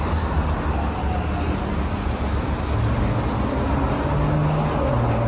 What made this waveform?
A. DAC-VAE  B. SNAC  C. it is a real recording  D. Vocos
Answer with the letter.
C